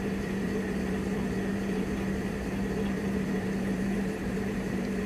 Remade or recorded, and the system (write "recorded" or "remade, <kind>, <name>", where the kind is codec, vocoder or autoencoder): remade, vocoder, BigVGAN v2